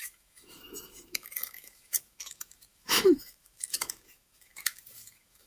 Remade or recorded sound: remade